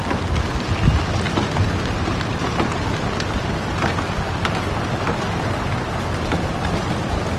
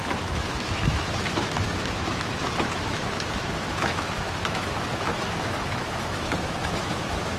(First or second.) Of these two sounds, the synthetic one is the second